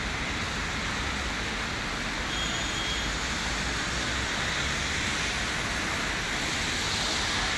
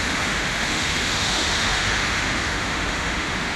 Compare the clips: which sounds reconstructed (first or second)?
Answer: second